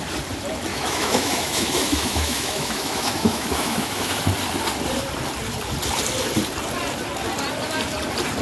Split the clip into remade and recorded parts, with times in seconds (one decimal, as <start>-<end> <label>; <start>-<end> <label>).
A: 0.0-0.7 recorded; 0.7-4.2 remade; 4.2-8.4 recorded